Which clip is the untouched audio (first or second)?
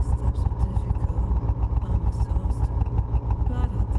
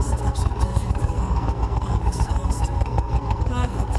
first